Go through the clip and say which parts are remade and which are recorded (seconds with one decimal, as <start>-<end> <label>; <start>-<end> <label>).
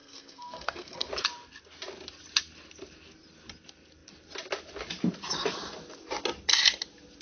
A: 0.0-1.1 remade; 1.1-7.2 recorded